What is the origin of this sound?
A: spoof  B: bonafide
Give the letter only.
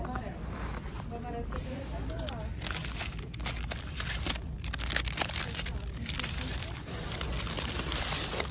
B